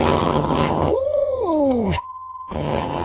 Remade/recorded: remade